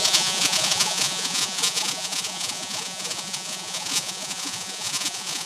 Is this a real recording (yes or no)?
no